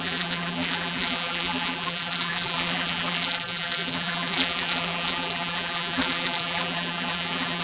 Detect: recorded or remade remade